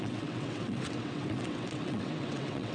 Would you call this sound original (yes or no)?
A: no